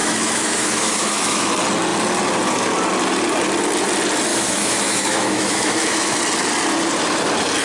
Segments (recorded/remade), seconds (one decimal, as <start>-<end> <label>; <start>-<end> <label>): 0.0-1.5 remade; 1.5-4.3 recorded; 4.3-6.2 remade; 6.2-7.6 recorded